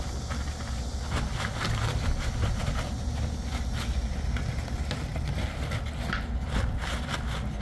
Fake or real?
real